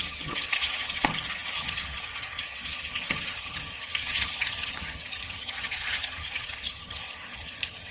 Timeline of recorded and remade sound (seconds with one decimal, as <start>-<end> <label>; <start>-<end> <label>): 0.0-7.9 remade

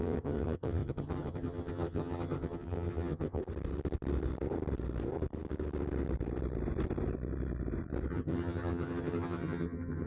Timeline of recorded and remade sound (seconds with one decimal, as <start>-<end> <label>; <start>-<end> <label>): 0.0-3.4 remade; 3.4-8.1 recorded; 8.1-10.1 remade

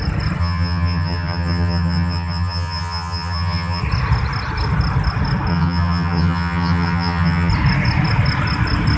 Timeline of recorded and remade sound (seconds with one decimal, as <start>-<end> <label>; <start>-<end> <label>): 0.0-0.4 recorded; 0.4-3.8 remade; 3.8-5.5 recorded; 5.5-7.5 remade; 7.5-9.0 recorded

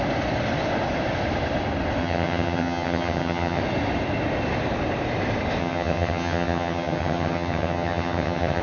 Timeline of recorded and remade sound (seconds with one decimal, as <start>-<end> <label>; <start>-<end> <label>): 0.0-2.0 recorded; 2.0-3.6 remade; 3.6-5.6 recorded; 5.6-8.6 remade

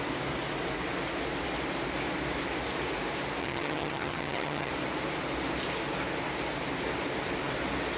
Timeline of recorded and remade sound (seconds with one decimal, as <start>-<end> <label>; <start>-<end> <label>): 0.0-3.4 recorded; 3.4-4.7 remade; 4.7-8.0 recorded

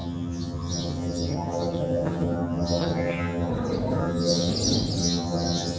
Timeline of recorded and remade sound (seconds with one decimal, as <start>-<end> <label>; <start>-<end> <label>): 0.0-3.5 remade; 3.5-4.0 recorded; 4.0-4.5 remade; 4.5-5.0 recorded; 5.0-5.8 remade

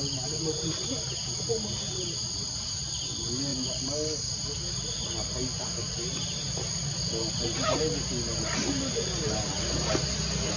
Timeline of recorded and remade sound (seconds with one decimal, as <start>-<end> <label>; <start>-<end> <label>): 0.0-10.6 recorded